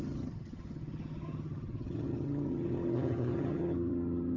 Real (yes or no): no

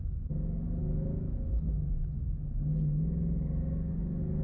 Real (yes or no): yes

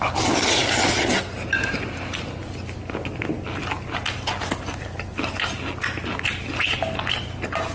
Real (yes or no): yes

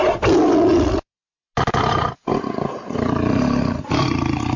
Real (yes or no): yes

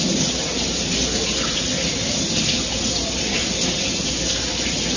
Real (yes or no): yes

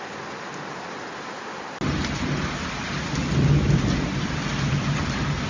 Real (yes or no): yes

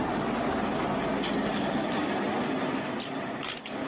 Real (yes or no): yes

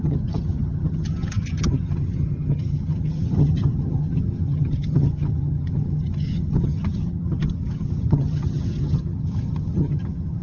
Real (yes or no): no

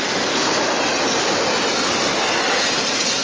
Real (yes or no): yes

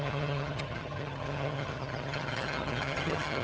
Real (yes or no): no